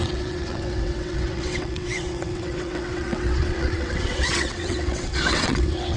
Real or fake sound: fake